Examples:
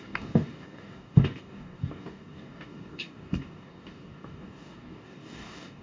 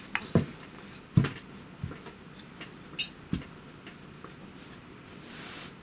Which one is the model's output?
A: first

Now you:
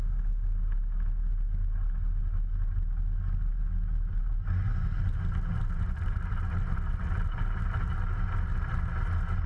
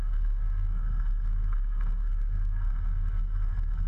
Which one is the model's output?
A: second